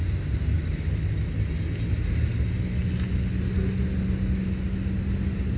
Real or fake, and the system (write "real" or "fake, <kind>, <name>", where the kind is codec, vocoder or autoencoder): real